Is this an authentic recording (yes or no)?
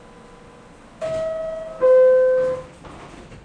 yes